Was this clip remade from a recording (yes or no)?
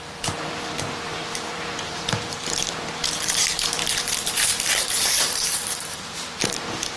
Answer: yes